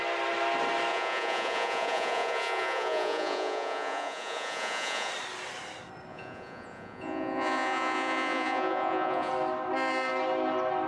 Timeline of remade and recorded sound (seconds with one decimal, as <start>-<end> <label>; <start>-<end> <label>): 0.0-0.9 recorded; 0.9-5.1 remade; 5.1-6.1 recorded; 6.1-9.3 remade; 9.3-10.9 recorded